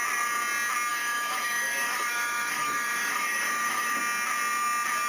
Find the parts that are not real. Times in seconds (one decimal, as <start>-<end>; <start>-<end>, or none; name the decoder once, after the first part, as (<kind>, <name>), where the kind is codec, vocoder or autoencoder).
0.9-4.0 (autoencoder, DAC-VAE)